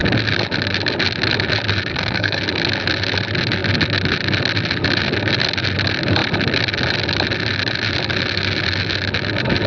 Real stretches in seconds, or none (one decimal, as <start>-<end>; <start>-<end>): 0.0-1.9; 2.4-9.7